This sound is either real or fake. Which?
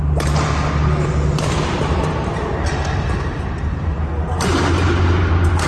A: real